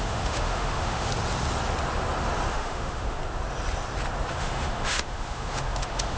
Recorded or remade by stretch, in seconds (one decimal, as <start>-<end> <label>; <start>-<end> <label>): 0.0-1.1 remade; 1.1-2.5 recorded; 2.5-3.2 remade; 3.2-4.3 recorded; 4.3-6.2 remade